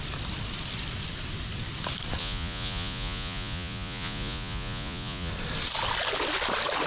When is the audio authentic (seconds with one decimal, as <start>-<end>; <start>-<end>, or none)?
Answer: 0.0-2.2; 5.3-6.9